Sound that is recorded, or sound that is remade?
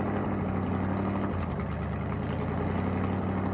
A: recorded